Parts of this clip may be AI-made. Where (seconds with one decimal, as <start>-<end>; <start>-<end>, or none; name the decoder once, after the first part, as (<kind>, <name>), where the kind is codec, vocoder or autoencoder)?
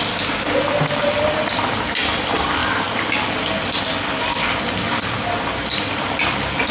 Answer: none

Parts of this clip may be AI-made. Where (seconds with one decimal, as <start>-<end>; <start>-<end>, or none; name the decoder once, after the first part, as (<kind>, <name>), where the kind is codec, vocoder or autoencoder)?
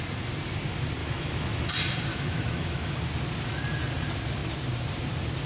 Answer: 1.0-1.7 (autoencoder, DAC-VAE); 2.1-3.0